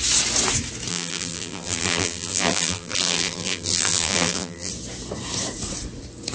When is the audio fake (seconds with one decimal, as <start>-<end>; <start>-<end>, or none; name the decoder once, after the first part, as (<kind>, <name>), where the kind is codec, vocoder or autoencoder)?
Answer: 0.9-4.7 (vocoder, BigVGAN v2)